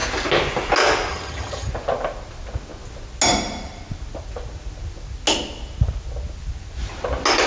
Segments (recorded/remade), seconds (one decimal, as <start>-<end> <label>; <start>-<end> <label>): 0.0-1.1 recorded; 1.1-1.7 remade; 1.7-7.5 recorded